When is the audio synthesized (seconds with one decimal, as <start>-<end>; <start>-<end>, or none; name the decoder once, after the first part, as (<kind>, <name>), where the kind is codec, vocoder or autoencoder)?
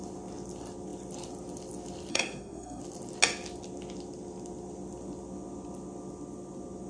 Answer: 2.1-2.8 (codec, SNAC)